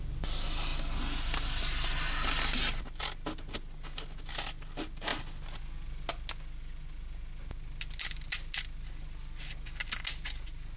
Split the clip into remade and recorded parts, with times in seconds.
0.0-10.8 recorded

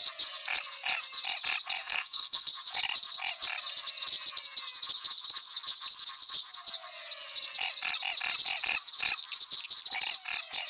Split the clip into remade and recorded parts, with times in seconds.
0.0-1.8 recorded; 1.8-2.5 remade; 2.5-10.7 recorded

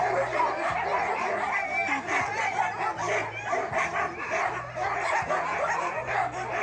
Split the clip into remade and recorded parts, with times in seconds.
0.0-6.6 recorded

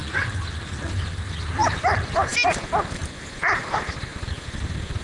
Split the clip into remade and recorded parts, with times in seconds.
0.0-5.0 recorded

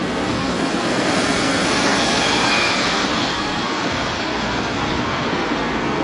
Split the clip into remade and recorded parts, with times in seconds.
0.0-6.0 remade